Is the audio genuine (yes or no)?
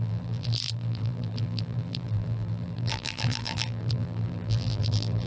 no